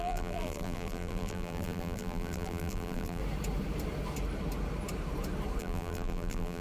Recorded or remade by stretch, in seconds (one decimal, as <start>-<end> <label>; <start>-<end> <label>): 0.0-3.2 remade; 3.2-5.6 recorded; 5.6-6.6 remade